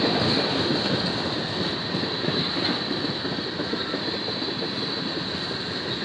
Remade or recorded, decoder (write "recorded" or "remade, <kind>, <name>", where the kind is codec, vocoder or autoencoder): recorded